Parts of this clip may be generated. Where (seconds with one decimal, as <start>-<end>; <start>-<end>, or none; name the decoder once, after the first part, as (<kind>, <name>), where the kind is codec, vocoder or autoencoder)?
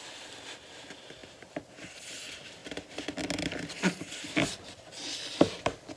none